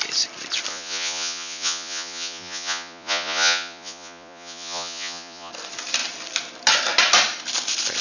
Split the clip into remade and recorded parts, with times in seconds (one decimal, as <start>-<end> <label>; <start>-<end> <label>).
0.0-0.7 recorded; 0.7-5.5 remade; 5.5-8.0 recorded